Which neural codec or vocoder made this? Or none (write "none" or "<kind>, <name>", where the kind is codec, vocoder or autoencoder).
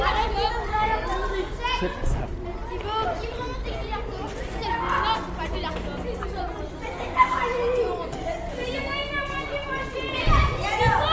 none